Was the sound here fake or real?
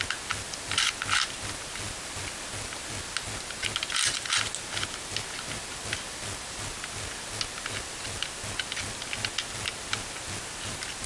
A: real